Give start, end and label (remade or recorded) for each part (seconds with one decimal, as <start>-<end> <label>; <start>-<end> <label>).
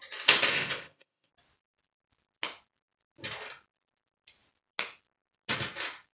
0.0-0.5 recorded; 0.5-1.3 remade; 1.3-6.1 recorded